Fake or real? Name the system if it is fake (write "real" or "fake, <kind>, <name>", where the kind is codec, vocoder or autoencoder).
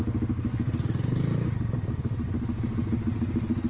real